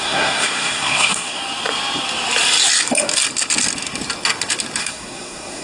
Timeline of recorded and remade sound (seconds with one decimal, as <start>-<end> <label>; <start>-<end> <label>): 0.0-1.4 remade; 1.4-4.8 recorded; 4.8-5.6 remade